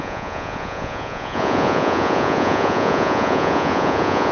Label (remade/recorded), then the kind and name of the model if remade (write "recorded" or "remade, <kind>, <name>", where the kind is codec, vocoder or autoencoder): remade, vocoder, Vocos